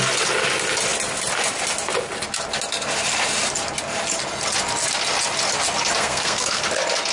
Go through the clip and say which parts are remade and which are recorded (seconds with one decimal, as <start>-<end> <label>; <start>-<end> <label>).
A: 0.0-6.0 recorded; 6.0-6.6 remade; 6.6-7.1 recorded